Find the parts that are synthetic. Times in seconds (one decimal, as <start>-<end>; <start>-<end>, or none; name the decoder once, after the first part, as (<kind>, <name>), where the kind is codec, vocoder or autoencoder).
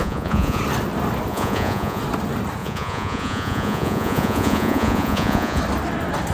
0.0-0.6 (vocoder, Vocos); 1.3-2.0; 2.6-5.6